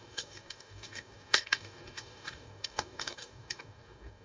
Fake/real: fake